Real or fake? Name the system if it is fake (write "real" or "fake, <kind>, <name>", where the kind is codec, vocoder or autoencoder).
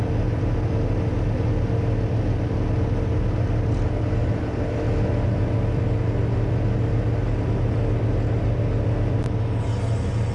real